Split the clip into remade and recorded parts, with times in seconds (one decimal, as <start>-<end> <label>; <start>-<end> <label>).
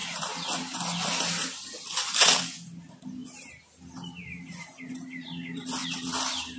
0.0-6.6 recorded